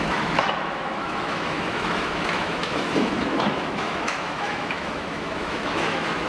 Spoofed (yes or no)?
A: yes